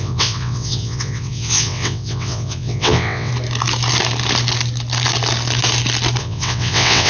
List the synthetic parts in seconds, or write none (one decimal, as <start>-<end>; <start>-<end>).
0.0-3.3; 6.2-7.1